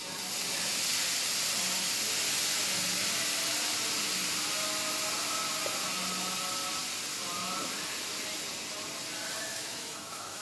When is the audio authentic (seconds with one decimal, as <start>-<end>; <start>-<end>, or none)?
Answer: 0.0-9.5